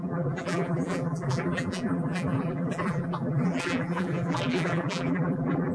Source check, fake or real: fake